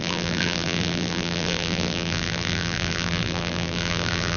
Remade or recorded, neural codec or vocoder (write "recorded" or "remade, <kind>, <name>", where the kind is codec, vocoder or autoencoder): remade, vocoder, BigVGAN v2